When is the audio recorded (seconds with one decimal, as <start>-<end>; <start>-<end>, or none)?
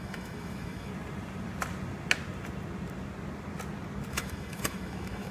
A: 0.9-4.1